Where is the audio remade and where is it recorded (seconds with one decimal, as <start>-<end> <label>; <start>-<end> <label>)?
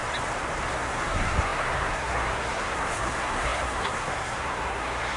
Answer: 0.0-0.8 recorded; 0.8-5.2 remade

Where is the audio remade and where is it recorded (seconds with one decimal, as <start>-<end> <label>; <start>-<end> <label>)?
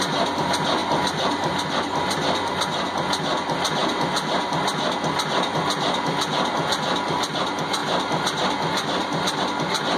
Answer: 0.0-10.0 recorded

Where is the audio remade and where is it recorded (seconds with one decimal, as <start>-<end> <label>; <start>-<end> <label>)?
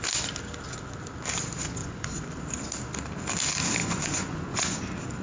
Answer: 0.0-1.8 recorded; 1.8-2.4 remade; 2.4-3.8 recorded; 3.8-4.8 remade; 4.8-5.2 recorded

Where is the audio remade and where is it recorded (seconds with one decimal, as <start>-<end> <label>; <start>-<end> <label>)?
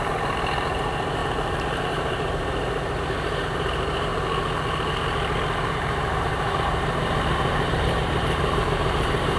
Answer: 0.0-1.2 remade; 1.2-1.8 recorded; 1.8-4.1 remade; 4.1-5.7 recorded; 5.7-9.4 remade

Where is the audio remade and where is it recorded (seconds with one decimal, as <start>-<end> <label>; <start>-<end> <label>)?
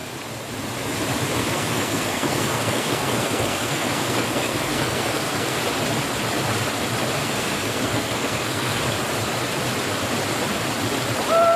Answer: 0.0-1.4 recorded; 1.4-5.6 remade; 5.6-7.2 recorded; 7.2-8.8 remade; 8.8-11.6 recorded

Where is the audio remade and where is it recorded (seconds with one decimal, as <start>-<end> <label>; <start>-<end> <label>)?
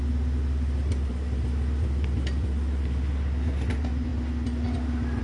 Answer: 0.0-5.2 recorded